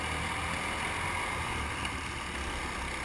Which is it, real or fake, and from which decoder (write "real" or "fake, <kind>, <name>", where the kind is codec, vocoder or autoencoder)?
real